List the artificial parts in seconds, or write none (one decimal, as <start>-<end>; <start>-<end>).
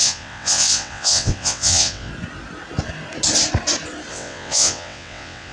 0.0-2.1; 4.1-5.5